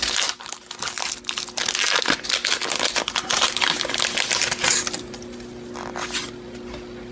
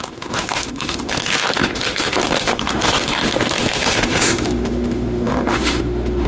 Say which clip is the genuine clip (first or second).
first